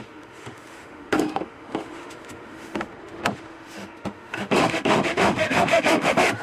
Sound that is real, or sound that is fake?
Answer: fake